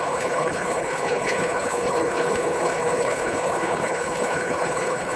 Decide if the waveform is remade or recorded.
remade